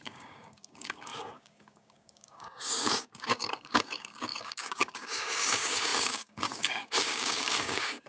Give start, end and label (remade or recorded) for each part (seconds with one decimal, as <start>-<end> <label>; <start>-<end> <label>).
0.0-8.1 remade